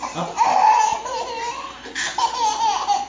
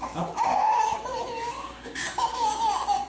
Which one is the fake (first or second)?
second